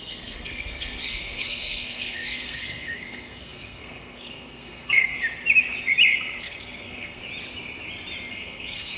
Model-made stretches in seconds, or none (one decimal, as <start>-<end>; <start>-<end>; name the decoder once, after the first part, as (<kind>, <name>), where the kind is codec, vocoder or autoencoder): 0.0-5.1 (codec, SNAC); 6.4-7.2; 8.3-9.0